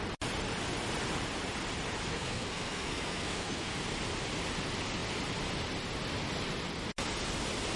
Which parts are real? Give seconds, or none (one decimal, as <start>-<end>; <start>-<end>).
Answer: 0.0-2.1; 3.7-7.8